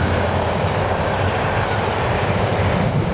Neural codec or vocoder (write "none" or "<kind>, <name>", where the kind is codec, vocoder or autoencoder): none